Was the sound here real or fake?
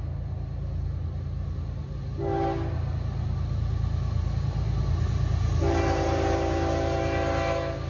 real